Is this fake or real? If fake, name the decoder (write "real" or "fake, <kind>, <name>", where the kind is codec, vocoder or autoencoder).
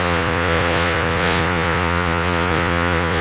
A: fake, vocoder, Vocos